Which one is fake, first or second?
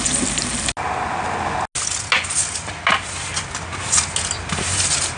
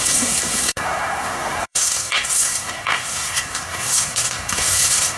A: second